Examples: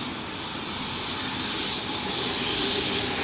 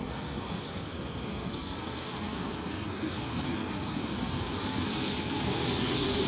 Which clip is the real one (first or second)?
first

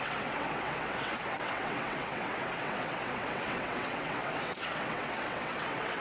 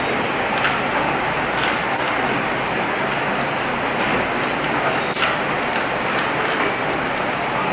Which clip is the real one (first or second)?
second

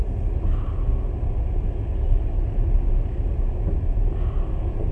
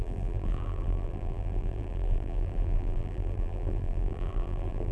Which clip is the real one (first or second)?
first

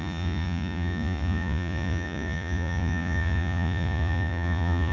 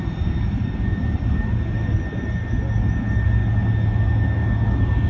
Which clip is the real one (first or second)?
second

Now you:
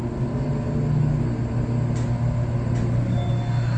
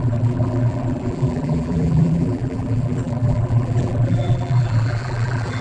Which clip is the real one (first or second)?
first